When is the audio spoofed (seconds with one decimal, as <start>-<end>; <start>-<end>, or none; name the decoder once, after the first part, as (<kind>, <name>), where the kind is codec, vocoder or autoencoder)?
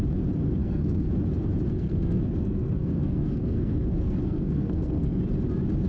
0.6-1.1 (codec, SNAC); 1.7-5.2